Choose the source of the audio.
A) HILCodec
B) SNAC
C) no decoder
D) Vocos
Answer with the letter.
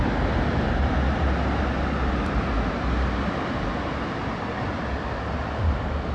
C